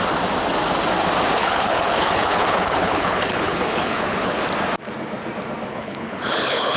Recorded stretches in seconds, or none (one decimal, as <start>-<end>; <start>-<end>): 0.0-1.4; 4.4-5.7

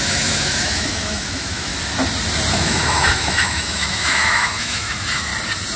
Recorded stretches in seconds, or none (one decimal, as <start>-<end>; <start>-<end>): 1.7-2.5; 5.3-5.8

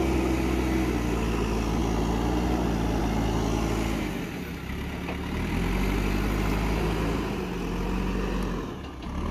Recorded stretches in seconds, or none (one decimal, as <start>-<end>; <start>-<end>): 0.0-9.3

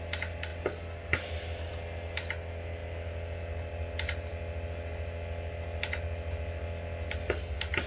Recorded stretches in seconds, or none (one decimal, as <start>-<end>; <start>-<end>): 0.0-7.9